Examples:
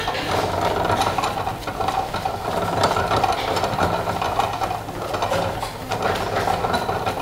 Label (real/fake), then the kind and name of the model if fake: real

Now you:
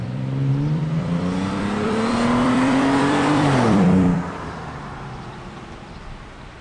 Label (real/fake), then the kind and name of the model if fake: fake, vocoder, BigVGAN v2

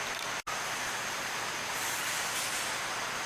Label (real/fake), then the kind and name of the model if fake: real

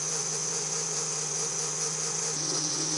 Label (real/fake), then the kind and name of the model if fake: fake, vocoder, Vocos